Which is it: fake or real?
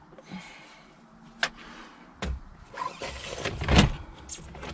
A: real